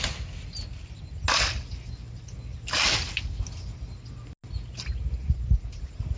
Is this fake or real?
real